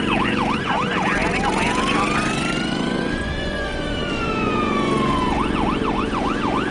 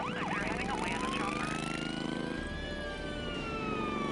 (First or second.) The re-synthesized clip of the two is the first